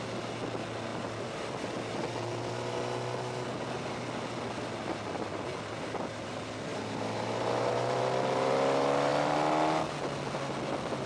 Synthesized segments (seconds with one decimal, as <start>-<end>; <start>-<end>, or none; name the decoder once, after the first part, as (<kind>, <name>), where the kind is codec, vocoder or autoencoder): 6.7-8.0 (vocoder, BigVGAN v2)